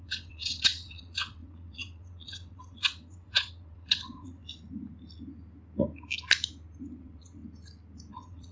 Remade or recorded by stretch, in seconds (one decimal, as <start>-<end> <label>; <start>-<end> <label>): 0.0-4.4 remade; 4.4-7.0 recorded; 7.0-7.4 remade; 7.4-8.1 recorded; 8.1-8.5 remade